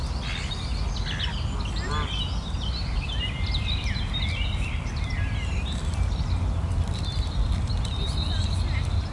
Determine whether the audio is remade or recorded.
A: recorded